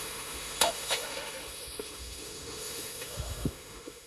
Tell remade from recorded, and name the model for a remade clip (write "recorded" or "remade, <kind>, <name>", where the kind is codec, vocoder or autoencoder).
remade, autoencoder, DAC-VAE